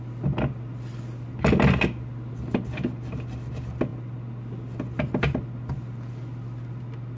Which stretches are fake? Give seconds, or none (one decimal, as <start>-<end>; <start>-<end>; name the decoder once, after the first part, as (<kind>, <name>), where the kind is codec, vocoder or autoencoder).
none